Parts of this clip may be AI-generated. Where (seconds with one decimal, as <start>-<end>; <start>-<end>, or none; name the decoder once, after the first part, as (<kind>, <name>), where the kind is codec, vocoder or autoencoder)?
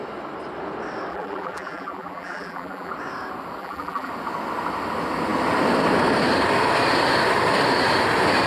1.1-2.9 (vocoder, BigVGAN v2); 3.6-4.1